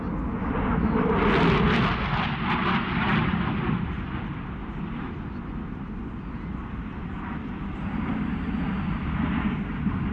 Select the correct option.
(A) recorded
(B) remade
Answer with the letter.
A